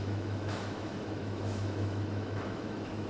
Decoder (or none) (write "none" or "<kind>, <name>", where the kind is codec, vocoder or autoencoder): autoencoder, DAC-VAE